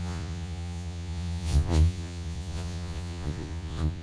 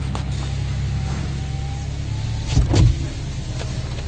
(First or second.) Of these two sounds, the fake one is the first